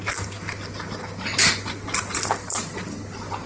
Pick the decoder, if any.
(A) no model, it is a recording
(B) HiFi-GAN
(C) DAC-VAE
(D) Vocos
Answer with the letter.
A